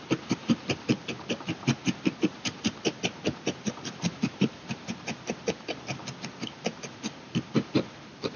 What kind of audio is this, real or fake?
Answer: fake